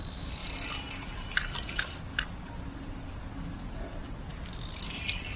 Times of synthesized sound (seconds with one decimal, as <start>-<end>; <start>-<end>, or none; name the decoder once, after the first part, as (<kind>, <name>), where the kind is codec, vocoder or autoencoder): none